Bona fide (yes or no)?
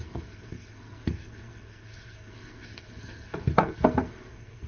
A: no